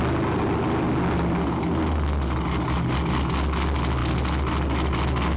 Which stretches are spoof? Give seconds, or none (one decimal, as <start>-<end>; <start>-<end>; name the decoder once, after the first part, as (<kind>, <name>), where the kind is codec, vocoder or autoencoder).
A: none